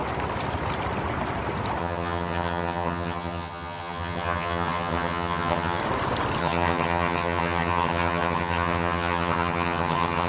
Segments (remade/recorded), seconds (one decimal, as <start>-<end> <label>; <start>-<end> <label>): 0.0-1.8 recorded; 1.8-5.8 remade; 5.8-6.4 recorded; 6.4-10.3 remade